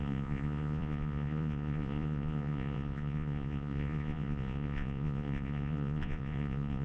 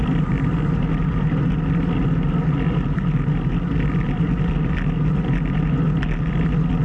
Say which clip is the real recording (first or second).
second